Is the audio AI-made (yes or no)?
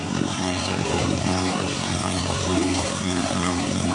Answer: yes